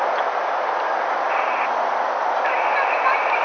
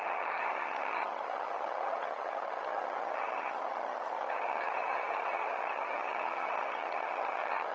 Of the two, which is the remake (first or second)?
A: second